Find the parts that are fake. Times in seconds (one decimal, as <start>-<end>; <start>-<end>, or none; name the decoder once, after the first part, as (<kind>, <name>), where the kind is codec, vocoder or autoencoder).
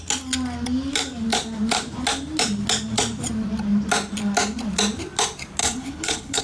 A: 5.6-6.4 (codec, HILCodec)